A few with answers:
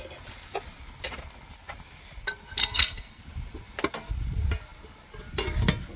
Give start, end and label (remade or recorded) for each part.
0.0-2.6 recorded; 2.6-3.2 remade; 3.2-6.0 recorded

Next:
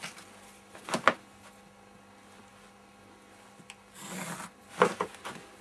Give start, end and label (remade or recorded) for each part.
0.0-5.6 recorded

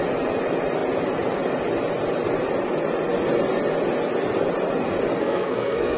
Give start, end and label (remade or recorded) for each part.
0.0-5.2 recorded; 5.2-6.0 remade

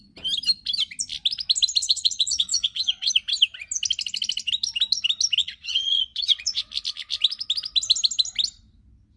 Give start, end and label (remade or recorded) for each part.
0.0-1.8 recorded; 1.8-3.1 remade; 3.1-5.4 recorded; 5.4-6.6 remade; 6.6-9.2 recorded